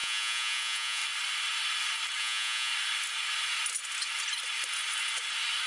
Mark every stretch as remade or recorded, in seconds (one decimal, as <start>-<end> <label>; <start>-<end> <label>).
0.0-1.0 remade; 1.0-2.2 recorded; 2.2-2.7 remade; 2.7-5.7 recorded